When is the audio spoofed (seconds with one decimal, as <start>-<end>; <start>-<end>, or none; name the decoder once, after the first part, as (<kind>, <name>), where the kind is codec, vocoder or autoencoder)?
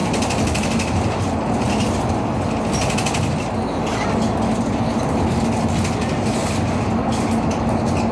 none